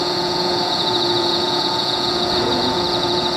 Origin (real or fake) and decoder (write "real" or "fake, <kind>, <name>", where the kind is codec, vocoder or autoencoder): fake, vocoder, Vocos